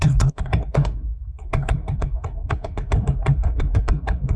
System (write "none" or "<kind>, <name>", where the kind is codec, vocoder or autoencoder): codec, SNAC